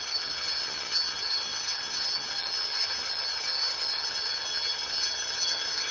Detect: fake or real fake